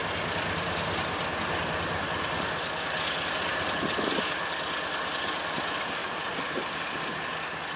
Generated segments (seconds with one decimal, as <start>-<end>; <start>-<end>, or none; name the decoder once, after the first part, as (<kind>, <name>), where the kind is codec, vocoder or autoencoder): 6.0-7.3 (vocoder, BigVGAN v2)